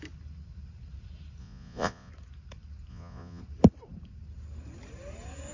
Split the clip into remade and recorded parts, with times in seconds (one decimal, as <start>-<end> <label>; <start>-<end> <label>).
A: 0.0-1.4 recorded; 1.4-2.1 remade; 2.1-2.9 recorded; 2.9-3.4 remade; 3.4-5.5 recorded